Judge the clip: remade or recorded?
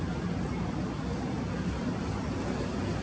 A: recorded